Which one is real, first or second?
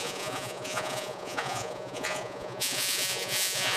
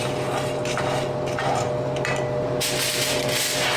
second